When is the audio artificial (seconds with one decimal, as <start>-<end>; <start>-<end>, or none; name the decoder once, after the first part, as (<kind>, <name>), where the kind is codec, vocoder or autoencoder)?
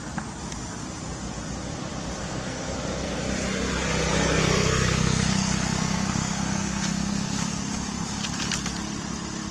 2.2-3.2 (codec, SNAC); 4.1-7.5